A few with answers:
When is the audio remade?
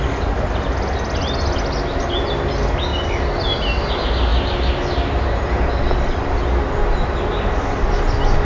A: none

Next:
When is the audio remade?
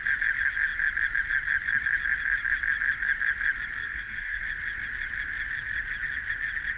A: 3.8-4.4